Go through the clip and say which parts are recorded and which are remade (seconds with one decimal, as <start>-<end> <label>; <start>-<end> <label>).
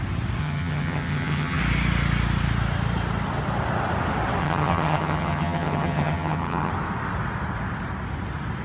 0.0-0.4 recorded; 0.4-1.6 remade; 1.6-4.4 recorded; 4.4-6.7 remade; 6.7-8.6 recorded